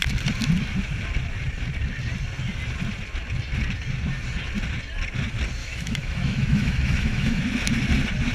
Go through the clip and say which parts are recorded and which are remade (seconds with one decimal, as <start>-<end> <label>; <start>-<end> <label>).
0.0-5.6 recorded; 5.6-7.4 remade; 7.4-8.3 recorded